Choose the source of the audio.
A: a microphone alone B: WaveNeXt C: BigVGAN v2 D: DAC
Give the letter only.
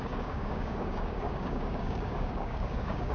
D